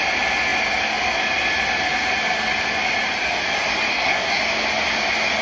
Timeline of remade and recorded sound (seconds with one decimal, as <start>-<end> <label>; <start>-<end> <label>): 0.0-3.9 recorded; 3.9-4.4 remade; 4.4-5.4 recorded